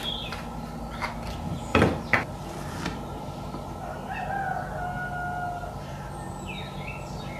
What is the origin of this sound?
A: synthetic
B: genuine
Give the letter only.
B